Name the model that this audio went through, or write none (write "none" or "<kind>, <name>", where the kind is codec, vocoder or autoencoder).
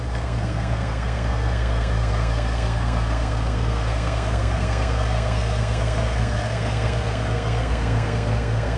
codec, SNAC